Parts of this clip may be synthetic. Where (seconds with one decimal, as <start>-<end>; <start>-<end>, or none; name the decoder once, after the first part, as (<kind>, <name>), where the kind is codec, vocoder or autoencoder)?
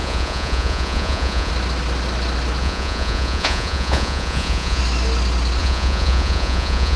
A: 0.0-1.5 (vocoder, Vocos); 2.6-4.8; 5.6-7.0